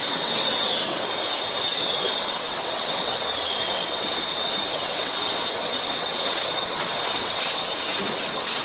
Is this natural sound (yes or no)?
no